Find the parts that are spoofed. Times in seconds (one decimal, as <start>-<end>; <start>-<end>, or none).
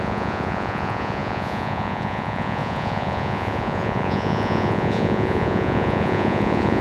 0.0-6.8